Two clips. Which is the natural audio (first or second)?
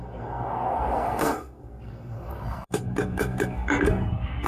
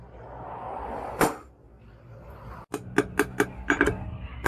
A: second